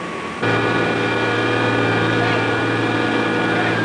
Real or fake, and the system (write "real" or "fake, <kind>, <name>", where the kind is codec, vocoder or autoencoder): real